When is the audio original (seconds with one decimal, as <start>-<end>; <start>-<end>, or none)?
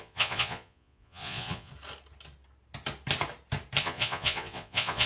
1.7-3.8